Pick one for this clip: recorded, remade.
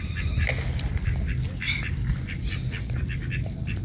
recorded